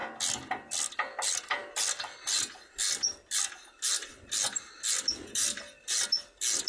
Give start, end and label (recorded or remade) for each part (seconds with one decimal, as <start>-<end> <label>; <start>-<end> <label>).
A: 0.0-6.7 recorded